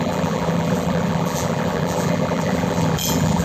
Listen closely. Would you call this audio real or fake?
fake